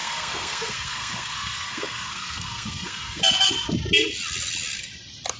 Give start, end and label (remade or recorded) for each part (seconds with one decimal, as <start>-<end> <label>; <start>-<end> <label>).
0.0-3.2 remade; 3.2-5.4 recorded